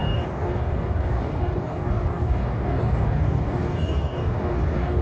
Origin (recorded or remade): remade